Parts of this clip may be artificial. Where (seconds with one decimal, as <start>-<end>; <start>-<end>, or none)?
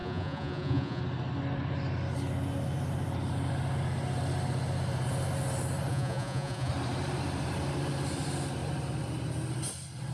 0.0-1.0; 5.9-6.7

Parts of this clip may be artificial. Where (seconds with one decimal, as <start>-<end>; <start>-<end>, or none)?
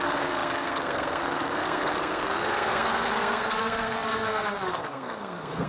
0.0-5.7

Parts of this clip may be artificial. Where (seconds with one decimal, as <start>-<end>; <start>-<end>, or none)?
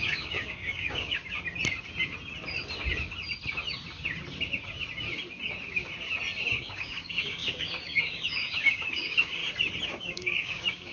0.0-1.2; 6.5-9.4; 9.9-10.9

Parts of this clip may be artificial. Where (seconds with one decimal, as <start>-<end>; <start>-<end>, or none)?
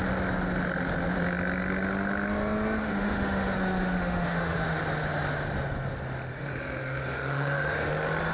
2.8-4.8; 6.3-7.9